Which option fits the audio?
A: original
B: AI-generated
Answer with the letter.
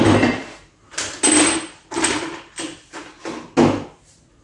A